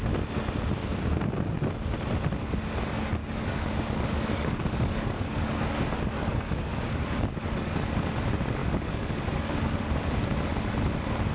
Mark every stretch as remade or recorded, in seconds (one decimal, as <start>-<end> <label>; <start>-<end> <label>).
0.0-3.2 recorded; 3.2-7.9 remade; 7.9-8.6 recorded; 8.6-9.8 remade; 9.8-11.3 recorded